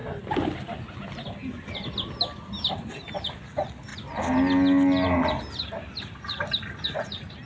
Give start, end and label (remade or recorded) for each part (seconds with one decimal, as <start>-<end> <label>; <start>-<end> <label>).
0.0-7.5 recorded